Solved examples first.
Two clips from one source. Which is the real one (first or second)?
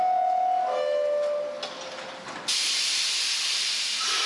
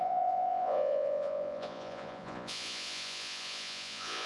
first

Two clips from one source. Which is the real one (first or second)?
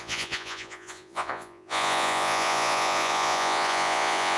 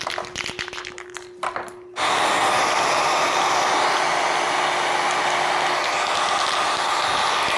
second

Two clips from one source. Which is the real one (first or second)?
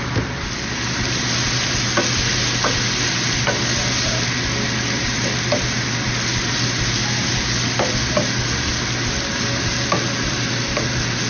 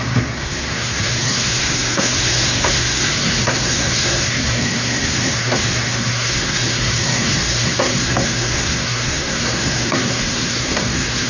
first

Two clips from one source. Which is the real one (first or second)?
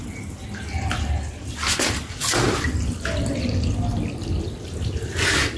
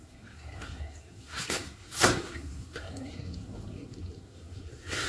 first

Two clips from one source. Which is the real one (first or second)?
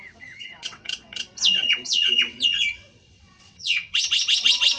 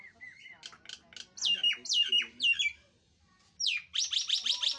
second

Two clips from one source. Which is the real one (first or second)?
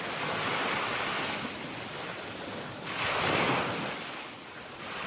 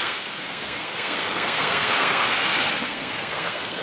first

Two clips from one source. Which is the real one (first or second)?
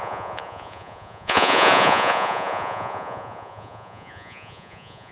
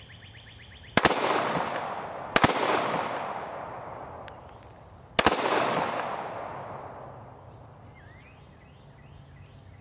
second